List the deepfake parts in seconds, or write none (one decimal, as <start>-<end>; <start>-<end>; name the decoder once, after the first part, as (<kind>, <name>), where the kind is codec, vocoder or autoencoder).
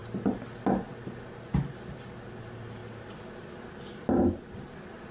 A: none